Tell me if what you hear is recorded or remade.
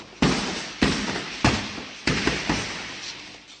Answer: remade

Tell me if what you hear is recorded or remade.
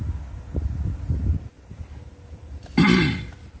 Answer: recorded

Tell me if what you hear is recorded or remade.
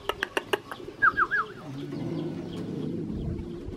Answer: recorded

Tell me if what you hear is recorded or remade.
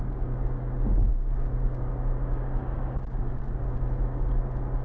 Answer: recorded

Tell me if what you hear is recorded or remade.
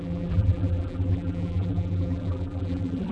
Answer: remade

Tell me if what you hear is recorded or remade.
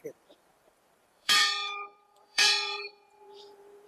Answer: remade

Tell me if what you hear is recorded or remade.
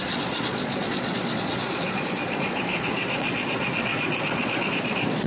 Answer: remade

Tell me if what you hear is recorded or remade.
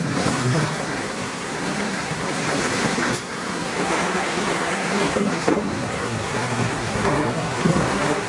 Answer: remade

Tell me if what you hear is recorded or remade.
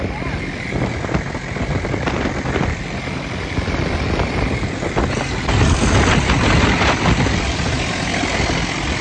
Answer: recorded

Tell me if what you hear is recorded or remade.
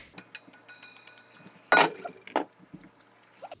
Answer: recorded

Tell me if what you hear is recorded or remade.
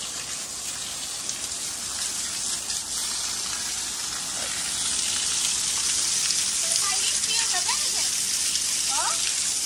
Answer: recorded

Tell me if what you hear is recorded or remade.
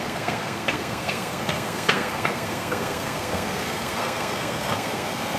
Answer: remade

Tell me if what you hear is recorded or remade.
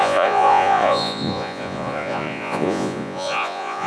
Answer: remade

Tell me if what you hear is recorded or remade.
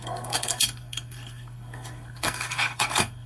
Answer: remade